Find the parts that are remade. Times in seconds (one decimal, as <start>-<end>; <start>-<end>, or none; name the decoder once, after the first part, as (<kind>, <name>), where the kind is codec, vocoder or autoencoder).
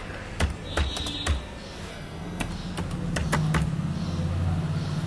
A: 1.9-2.5 (codec, SNAC)